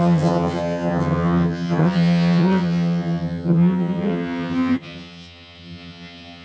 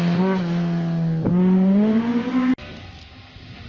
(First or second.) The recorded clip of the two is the second